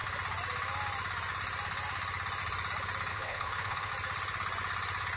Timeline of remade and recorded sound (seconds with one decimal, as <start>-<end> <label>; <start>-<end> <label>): 0.0-3.1 recorded; 3.1-3.9 remade; 3.9-5.2 recorded